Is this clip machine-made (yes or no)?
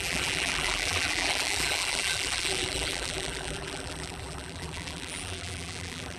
yes